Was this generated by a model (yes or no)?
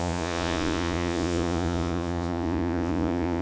yes